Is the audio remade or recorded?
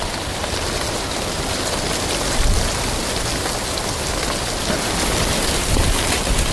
recorded